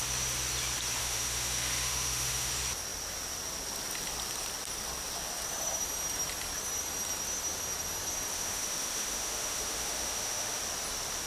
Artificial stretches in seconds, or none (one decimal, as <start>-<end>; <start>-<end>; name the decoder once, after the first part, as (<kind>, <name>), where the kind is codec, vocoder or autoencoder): 1.0-2.5 (autoencoder, DAC-VAE); 8.3-10.6